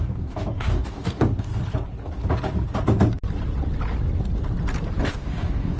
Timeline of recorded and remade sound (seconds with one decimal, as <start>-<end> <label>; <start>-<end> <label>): 0.0-1.5 remade; 1.5-5.0 recorded; 5.0-5.8 remade